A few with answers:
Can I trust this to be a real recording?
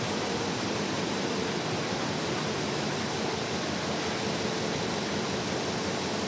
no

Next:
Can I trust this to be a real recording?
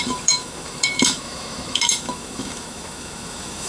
no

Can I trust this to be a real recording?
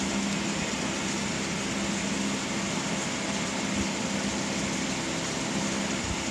yes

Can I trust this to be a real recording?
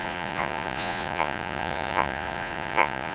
no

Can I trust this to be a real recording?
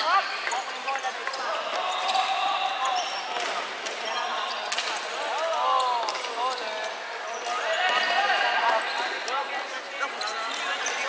yes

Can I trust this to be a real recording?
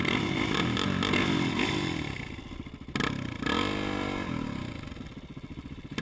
yes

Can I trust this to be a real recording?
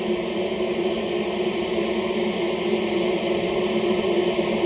no